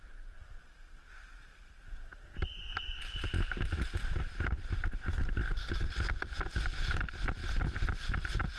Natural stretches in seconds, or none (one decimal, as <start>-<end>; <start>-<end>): 0.0-8.6